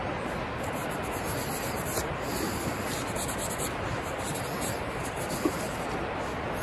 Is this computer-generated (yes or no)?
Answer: no